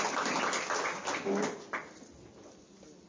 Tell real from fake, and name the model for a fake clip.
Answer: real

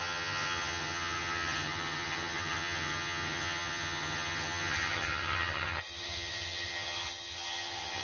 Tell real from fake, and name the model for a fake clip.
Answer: fake, vocoder, HiFi-GAN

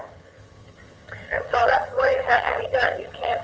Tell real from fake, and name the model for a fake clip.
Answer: fake, vocoder, HiFi-GAN